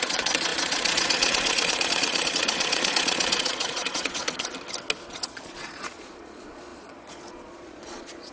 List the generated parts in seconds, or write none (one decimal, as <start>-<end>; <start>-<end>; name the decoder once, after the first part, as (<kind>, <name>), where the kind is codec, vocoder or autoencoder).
0.0-4.5 (vocoder, Vocos); 5.1-8.3

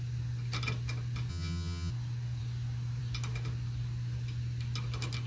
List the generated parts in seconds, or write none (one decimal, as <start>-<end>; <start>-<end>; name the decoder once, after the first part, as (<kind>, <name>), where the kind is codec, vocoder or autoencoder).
1.3-1.9 (vocoder, HiFi-GAN)

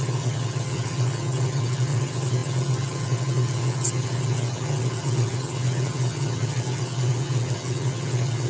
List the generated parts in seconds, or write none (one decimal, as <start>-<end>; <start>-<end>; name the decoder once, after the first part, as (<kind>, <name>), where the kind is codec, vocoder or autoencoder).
0.0-8.5 (vocoder, HiFi-GAN)

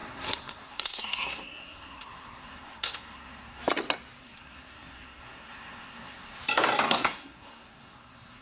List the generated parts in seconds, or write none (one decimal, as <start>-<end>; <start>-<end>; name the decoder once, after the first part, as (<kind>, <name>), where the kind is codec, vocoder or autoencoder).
0.0-3.6 (codec, SNAC); 4.2-6.4; 6.9-8.4

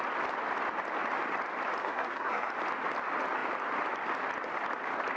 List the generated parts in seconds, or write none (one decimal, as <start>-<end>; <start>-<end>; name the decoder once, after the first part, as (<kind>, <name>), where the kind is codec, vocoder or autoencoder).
1.8-2.5 (codec, SNAC)